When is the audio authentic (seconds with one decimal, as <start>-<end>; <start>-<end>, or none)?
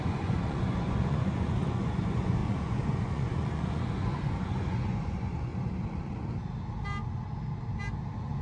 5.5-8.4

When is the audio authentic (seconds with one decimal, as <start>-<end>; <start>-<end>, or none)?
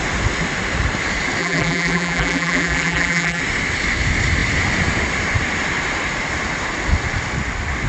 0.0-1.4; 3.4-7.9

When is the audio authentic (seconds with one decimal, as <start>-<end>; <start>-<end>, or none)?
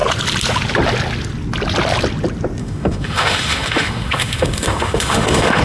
0.0-2.6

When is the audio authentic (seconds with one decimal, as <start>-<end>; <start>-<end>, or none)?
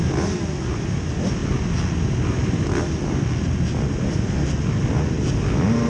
0.0-5.9